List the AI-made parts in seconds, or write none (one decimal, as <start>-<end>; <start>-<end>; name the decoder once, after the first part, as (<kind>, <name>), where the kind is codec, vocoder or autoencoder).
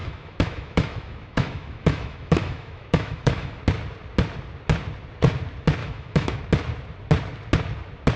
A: 0.0-3.6 (autoencoder, DAC-VAE); 5.8-6.4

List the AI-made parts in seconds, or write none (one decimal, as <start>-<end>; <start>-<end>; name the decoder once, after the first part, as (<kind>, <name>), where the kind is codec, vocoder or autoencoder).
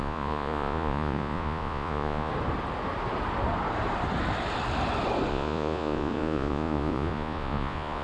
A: 0.0-2.3 (vocoder, Vocos); 5.3-8.0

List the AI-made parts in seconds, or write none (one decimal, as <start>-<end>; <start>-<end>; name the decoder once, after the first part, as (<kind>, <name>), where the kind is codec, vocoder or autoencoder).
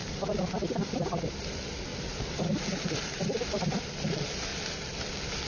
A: none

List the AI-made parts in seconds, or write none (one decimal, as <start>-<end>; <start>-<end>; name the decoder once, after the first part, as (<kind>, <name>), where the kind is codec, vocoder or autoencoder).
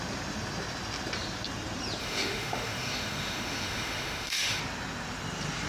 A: 2.0-4.6 (autoencoder, DAC-VAE)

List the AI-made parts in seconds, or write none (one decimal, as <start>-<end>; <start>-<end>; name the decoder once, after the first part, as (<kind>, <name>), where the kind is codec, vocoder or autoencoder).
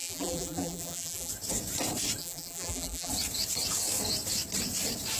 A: 0.0-1.3 (vocoder, BigVGAN v2); 2.2-3.1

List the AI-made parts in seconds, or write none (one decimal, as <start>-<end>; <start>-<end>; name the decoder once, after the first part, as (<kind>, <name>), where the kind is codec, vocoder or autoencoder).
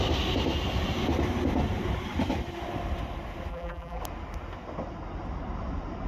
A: 3.5-4.0 (vocoder, BigVGAN v2)